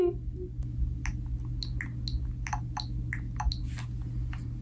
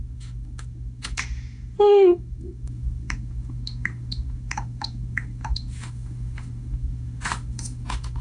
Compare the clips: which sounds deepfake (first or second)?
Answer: second